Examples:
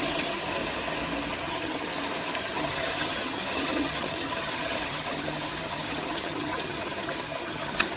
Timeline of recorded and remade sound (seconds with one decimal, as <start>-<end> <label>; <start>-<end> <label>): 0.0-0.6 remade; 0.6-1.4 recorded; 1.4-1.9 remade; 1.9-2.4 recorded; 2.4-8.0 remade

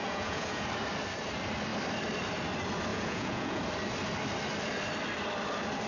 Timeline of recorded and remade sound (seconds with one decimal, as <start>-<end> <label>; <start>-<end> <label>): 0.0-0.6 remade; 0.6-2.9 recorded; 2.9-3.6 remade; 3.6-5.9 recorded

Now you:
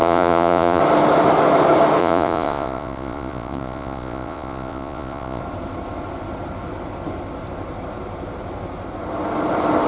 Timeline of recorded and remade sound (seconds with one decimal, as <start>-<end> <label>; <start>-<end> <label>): 0.0-0.8 remade; 0.8-2.0 recorded; 2.0-5.4 remade; 5.4-9.9 recorded